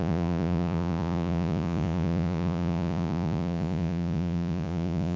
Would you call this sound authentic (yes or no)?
no